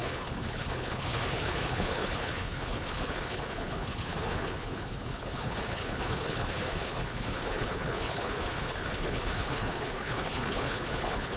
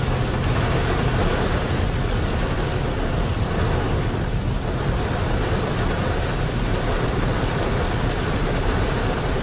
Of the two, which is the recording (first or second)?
second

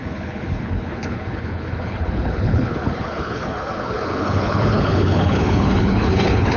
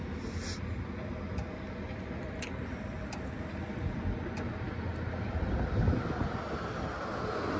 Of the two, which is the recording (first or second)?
second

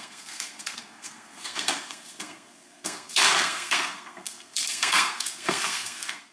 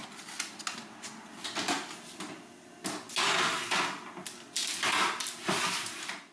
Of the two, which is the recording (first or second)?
second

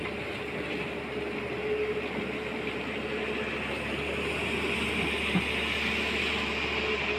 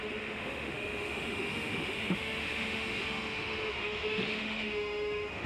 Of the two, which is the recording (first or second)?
first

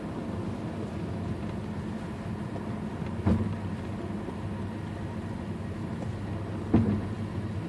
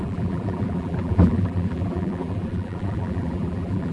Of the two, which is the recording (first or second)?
first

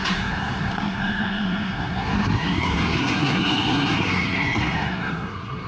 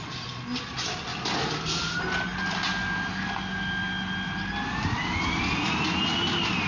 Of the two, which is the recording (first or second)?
second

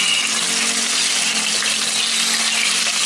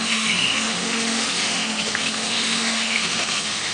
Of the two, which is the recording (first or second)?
first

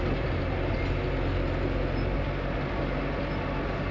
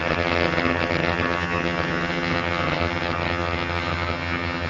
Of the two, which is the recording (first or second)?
first